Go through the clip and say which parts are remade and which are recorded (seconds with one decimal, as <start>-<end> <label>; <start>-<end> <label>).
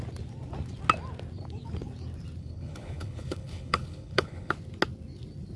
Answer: 0.0-2.4 recorded; 2.4-4.5 remade; 4.5-5.6 recorded